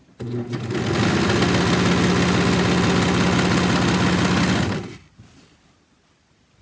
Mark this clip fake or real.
real